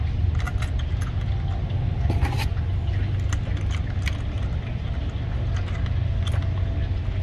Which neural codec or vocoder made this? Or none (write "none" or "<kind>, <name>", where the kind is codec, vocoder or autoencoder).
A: none